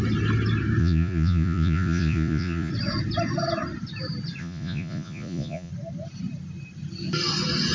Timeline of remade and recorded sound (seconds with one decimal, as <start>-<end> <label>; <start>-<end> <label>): 0.0-0.8 recorded; 0.8-2.7 remade; 2.7-4.4 recorded; 4.4-5.7 remade; 5.7-7.7 recorded

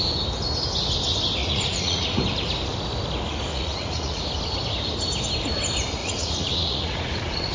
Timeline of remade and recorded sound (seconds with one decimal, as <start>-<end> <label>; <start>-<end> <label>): 0.0-1.4 recorded; 1.4-2.2 remade; 2.2-3.5 recorded; 3.5-4.2 remade; 4.2-6.0 recorded; 6.0-7.5 remade

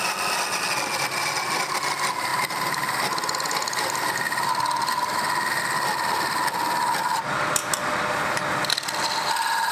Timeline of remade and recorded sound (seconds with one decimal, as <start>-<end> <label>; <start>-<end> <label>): 0.0-9.7 recorded

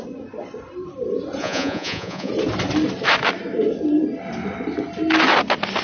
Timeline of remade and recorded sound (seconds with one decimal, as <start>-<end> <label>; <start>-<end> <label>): 0.0-1.4 recorded; 1.4-2.3 remade; 2.3-5.8 recorded